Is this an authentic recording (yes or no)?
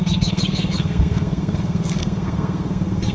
no